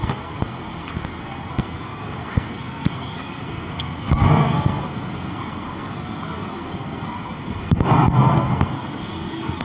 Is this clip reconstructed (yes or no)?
yes